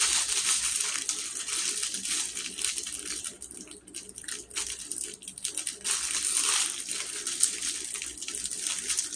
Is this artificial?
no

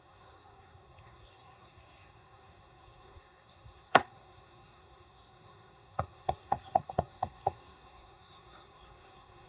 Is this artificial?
yes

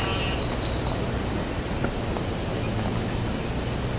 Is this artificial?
no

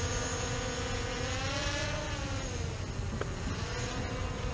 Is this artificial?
no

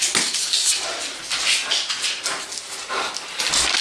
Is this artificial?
no